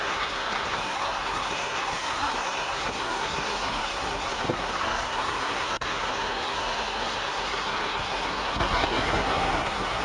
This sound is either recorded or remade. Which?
remade